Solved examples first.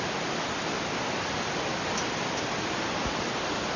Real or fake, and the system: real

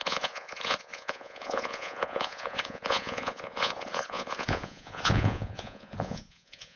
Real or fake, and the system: fake, vocoder, Vocos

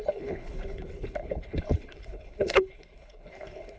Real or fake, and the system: fake, codec, HILCodec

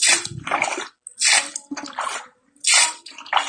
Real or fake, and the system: real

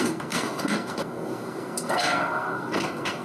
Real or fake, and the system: fake, codec, SNAC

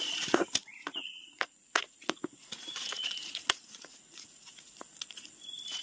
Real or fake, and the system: fake, vocoder, Vocos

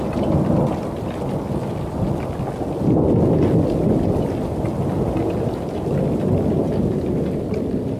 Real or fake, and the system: real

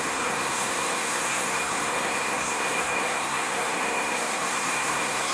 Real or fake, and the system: fake, codec, SNAC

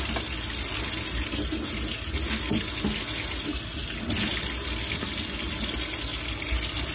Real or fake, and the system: real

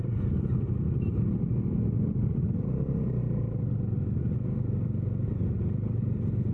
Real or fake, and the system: real